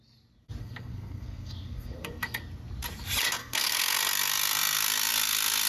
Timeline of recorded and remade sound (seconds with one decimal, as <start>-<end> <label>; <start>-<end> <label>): 0.0-0.6 recorded; 0.6-2.4 remade; 2.4-3.4 recorded; 3.4-4.0 remade; 4.0-5.7 recorded